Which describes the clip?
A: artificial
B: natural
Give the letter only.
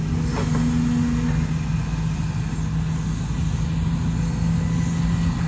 B